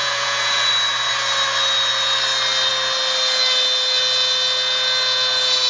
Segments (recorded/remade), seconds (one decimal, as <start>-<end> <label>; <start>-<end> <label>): 0.0-0.7 remade; 0.7-5.7 recorded